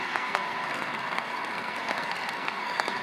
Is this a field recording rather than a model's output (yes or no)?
no